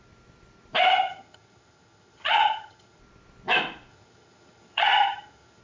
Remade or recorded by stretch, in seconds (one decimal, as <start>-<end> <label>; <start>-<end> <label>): 0.0-0.9 recorded; 0.9-3.0 remade; 3.0-3.9 recorded; 3.9-5.6 remade